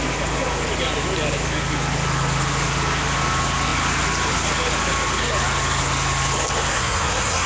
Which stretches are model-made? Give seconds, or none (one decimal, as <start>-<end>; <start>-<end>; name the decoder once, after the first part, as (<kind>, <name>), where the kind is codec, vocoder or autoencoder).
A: 6.7-7.5 (codec, SNAC)